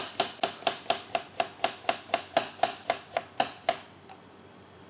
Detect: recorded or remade recorded